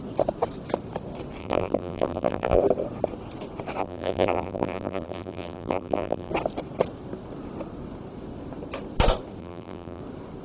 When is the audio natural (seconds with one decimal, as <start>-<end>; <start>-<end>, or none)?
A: 0.0-1.4; 2.6-3.8; 6.3-9.4; 10.0-10.4